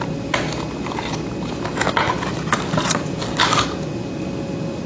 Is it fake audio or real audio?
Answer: real